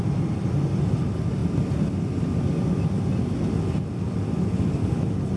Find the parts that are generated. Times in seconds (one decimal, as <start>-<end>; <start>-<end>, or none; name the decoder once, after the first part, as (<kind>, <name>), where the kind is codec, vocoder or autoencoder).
none